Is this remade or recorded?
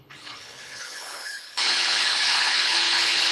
remade